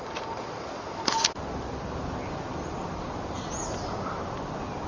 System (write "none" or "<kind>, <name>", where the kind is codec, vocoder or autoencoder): none